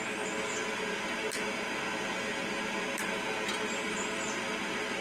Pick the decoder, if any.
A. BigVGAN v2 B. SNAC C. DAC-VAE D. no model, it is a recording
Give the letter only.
D